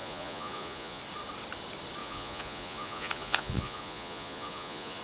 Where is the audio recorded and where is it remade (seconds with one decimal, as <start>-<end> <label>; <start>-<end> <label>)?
0.0-1.0 remade; 1.0-2.0 recorded; 2.0-5.0 remade